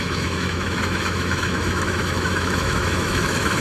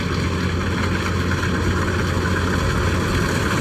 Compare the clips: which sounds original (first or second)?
second